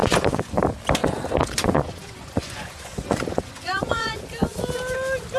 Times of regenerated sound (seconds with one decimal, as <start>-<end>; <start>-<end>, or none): 0.0-0.6; 1.0-4.2